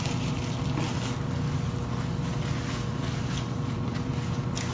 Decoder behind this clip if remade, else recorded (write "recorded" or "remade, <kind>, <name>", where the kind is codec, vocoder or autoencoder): recorded